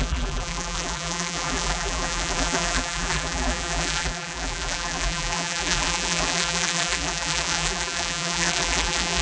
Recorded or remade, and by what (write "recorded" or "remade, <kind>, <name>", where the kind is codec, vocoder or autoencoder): remade, vocoder, BigVGAN v2